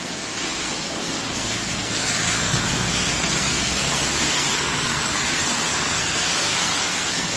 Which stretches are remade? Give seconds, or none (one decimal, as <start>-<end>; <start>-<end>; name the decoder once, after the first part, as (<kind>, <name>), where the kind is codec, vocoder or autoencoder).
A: 0.0-7.4 (codec, SNAC)